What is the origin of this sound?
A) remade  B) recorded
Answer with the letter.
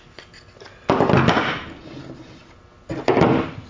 B